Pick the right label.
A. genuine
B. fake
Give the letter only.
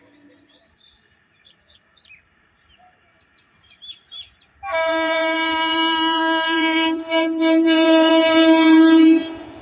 B